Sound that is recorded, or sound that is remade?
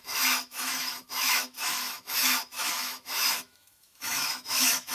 remade